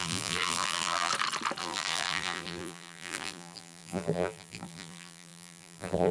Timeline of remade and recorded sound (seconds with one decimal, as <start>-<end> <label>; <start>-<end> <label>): 0.0-1.1 remade; 1.1-1.6 recorded; 1.6-6.1 remade